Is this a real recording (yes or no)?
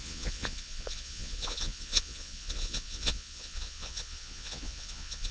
no